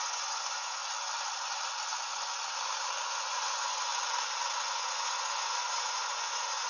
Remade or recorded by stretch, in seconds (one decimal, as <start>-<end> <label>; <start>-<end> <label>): 0.0-0.8 remade; 0.8-3.1 recorded; 3.1-3.9 remade; 3.9-4.6 recorded; 4.6-6.7 remade